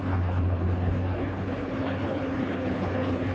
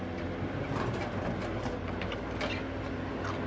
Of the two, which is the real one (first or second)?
second